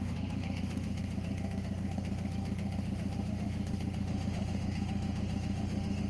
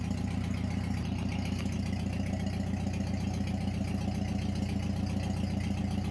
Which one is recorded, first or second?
second